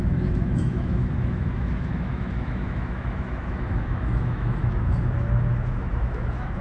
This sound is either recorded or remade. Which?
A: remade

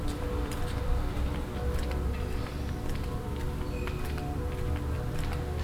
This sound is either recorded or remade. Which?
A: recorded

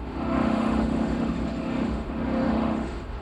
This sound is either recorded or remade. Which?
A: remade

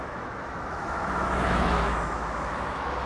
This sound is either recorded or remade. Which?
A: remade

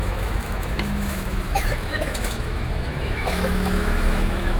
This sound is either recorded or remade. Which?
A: remade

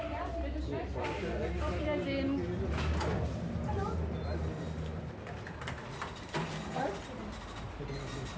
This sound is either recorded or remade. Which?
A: recorded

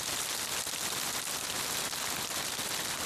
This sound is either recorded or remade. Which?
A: recorded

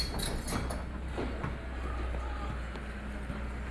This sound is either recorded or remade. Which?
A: recorded